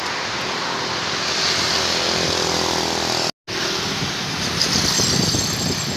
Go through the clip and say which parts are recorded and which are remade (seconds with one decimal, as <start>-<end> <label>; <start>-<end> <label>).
0.0-6.0 recorded

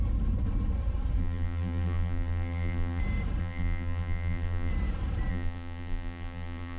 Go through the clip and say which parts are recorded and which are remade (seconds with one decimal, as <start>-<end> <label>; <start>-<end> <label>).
0.0-1.2 recorded; 1.2-3.0 remade; 3.0-3.4 recorded; 3.4-4.7 remade; 4.7-5.3 recorded; 5.3-6.8 remade

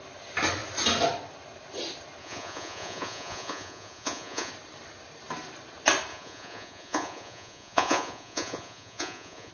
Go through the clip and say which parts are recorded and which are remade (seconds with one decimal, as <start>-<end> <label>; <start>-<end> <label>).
0.0-2.2 recorded; 2.2-4.5 remade; 4.5-6.1 recorded; 6.1-9.5 remade

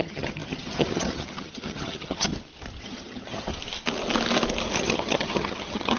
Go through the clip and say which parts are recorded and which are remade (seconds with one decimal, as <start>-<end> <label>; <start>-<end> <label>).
0.0-2.3 remade; 2.3-2.8 recorded; 2.8-3.5 remade; 3.5-4.8 recorded; 4.8-6.0 remade